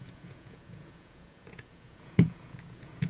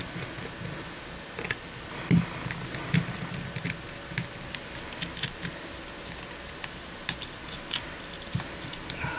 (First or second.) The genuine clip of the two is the second